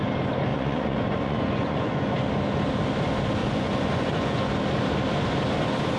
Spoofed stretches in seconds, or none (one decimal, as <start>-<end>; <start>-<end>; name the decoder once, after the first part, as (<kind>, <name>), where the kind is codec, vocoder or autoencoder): 0.5-2.1 (vocoder, Vocos); 3.4-4.5

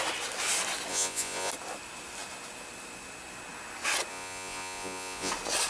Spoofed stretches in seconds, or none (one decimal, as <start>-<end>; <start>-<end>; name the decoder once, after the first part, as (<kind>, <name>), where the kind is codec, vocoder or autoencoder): 0.9-1.5 (vocoder, Vocos); 4.1-5.3

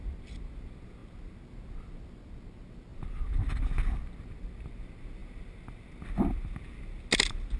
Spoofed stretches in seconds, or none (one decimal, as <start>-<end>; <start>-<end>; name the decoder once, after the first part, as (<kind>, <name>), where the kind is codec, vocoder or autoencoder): none

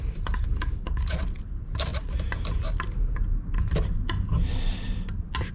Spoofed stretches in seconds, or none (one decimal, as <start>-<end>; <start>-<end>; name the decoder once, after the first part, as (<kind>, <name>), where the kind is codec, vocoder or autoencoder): none

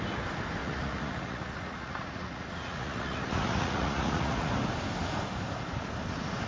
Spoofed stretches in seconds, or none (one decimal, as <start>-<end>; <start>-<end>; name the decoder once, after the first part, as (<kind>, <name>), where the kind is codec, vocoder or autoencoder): 0.6-4.5 (vocoder, Vocos)

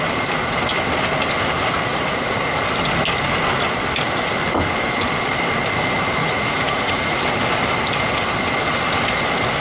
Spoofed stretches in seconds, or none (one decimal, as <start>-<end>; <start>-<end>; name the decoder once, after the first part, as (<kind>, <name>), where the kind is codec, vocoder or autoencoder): 1.9-2.4 (vocoder, Vocos); 6.2-7.2